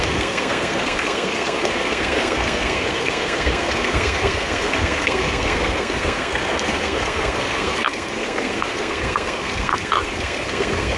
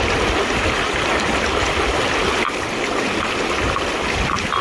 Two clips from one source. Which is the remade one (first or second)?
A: first